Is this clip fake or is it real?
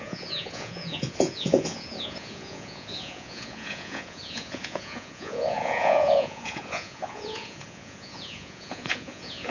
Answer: fake